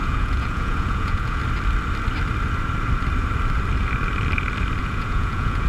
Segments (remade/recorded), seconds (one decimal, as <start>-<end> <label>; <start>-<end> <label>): 0.0-1.4 remade; 1.4-4.8 recorded; 4.8-5.7 remade